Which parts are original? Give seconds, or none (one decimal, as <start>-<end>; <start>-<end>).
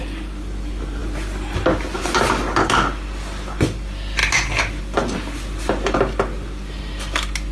0.0-7.5